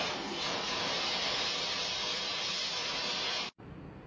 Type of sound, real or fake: real